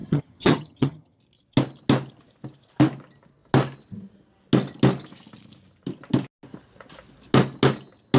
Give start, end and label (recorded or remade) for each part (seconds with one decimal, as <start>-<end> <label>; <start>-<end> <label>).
0.0-1.2 remade; 1.2-8.2 recorded